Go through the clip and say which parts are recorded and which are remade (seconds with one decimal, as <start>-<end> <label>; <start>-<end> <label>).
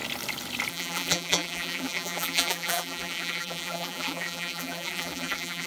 0.0-0.7 recorded; 0.7-5.7 remade